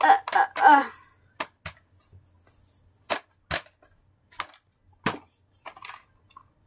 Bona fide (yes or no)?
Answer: yes